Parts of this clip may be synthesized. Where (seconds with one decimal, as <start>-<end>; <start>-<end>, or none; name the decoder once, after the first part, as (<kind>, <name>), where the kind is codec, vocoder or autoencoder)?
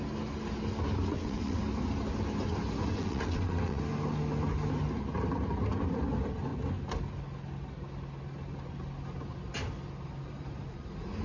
1.1-1.6 (vocoder, WaveNeXt); 2.9-3.8